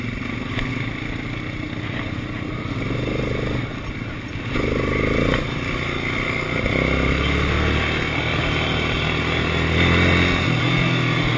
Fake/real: real